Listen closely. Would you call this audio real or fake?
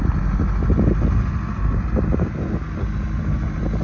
real